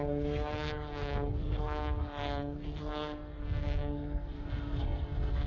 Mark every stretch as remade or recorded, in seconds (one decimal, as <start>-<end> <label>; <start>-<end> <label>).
0.0-5.5 remade

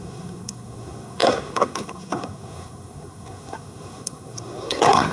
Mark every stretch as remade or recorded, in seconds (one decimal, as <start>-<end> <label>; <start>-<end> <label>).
0.0-5.1 remade

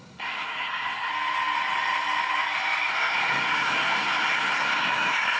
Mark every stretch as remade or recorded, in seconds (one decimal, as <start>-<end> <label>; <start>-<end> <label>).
0.0-1.1 remade; 1.1-2.9 recorded; 2.9-5.4 remade